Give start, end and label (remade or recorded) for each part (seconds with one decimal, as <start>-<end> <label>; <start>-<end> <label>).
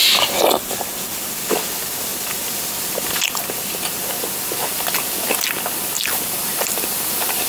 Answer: 0.0-7.5 recorded